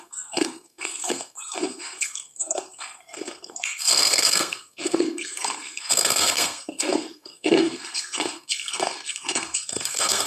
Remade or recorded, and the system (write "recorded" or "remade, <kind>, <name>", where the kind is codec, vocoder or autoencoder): remade, codec, SNAC